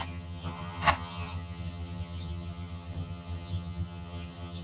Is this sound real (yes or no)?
no